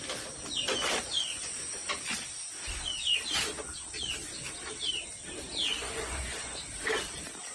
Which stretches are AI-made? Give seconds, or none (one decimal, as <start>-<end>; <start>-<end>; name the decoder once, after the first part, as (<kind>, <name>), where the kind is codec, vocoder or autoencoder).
1.3-1.9 (vocoder, Vocos); 5.7-6.6